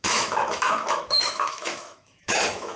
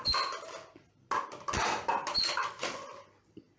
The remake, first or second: first